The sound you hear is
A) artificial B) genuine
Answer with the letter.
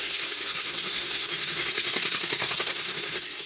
A